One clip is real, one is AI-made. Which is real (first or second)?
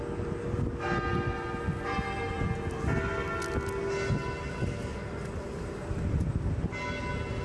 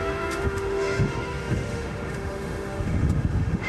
first